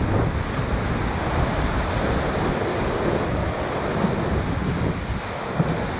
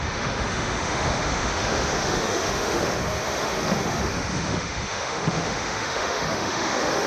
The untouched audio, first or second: first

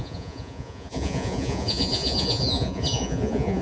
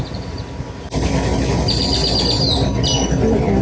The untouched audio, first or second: second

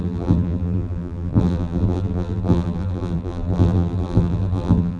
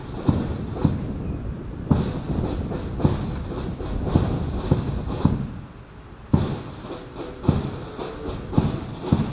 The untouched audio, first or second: second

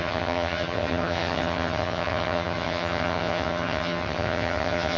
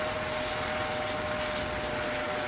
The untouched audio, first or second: second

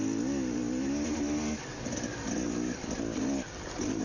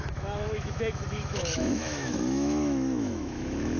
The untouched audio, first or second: first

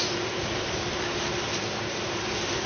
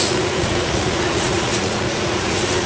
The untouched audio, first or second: first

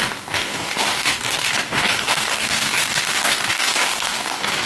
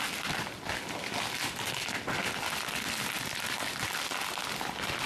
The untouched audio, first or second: second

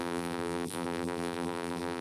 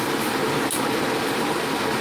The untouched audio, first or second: second